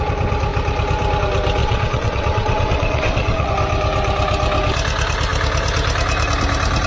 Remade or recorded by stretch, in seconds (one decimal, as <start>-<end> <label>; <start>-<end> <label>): 0.0-1.6 recorded; 1.6-3.5 remade; 3.5-6.9 recorded